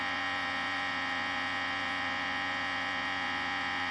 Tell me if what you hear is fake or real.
fake